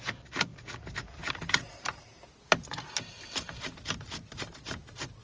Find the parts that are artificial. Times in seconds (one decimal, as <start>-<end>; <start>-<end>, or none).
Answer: none